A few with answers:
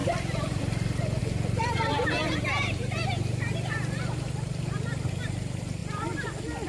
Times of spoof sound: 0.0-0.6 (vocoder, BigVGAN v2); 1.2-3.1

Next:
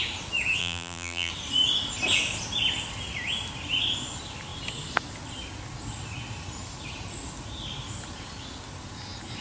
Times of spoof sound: 0.6-1.3 (vocoder, BigVGAN v2)

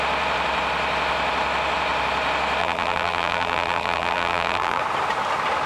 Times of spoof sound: 2.6-4.8 (vocoder, BigVGAN v2)

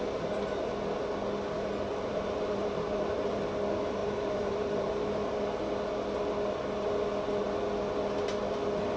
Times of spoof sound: 1.9-3.4 (vocoder, BigVGAN v2); 4.0-5.4

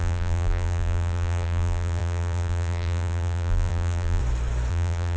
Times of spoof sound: 0.0-4.2 (vocoder, BigVGAN v2); 4.7-5.2

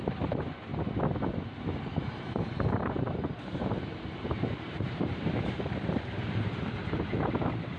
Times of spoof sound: 0.0-0.7 (vocoder, BigVGAN v2); 1.3-7.8

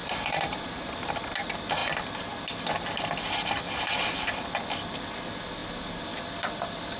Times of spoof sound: 0.0-1.1 (vocoder, BigVGAN v2)